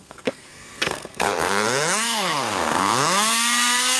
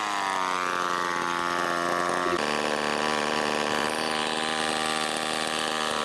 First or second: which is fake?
first